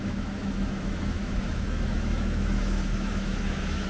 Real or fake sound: fake